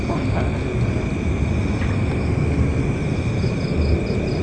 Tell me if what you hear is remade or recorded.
recorded